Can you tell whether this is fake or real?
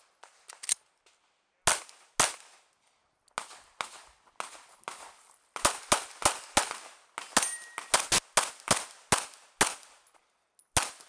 real